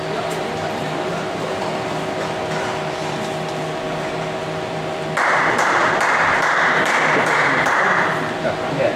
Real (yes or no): no